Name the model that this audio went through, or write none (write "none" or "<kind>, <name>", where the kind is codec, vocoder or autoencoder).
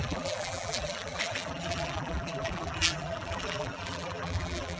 vocoder, BigVGAN v2